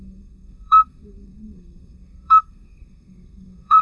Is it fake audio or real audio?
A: fake